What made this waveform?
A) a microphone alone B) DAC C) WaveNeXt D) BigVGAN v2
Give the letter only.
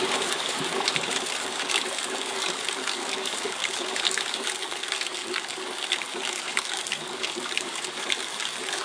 B